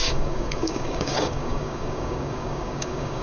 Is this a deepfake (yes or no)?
yes